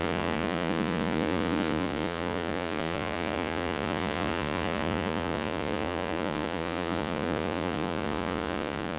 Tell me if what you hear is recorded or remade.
remade